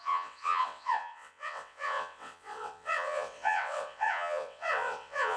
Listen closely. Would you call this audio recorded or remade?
remade